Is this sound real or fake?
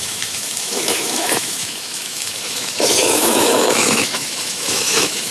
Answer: fake